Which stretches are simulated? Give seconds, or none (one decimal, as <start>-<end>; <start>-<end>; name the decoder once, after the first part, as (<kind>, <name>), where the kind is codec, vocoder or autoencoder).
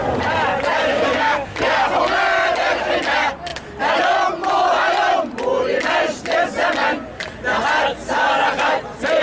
0.9-1.6 (codec, DAC)